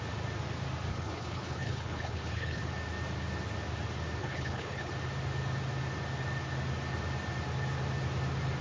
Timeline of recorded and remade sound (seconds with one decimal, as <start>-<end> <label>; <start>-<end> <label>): 0.0-0.9 recorded; 0.9-2.6 remade; 2.6-4.2 recorded; 4.2-4.9 remade; 4.9-8.6 recorded